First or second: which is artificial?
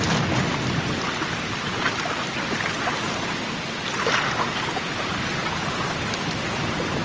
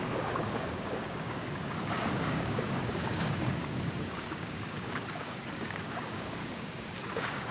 second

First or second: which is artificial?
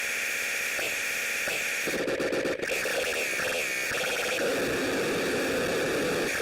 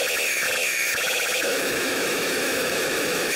second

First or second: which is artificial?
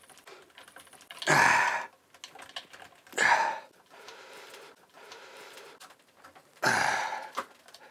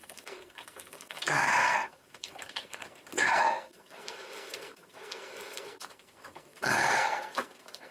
second